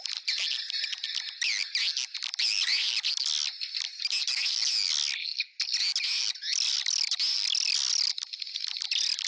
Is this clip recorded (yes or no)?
yes